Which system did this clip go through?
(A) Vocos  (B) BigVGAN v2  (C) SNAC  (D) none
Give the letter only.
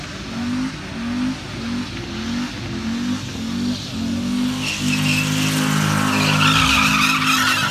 D